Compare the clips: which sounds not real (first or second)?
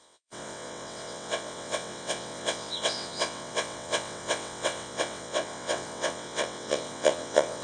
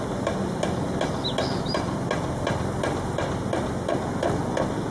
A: first